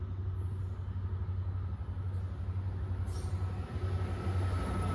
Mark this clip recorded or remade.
recorded